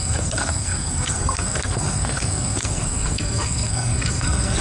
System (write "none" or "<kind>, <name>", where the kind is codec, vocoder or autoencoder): codec, SNAC